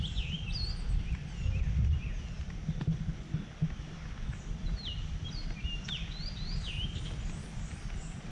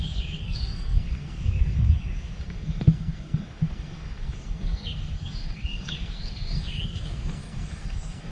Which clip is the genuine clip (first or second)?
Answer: first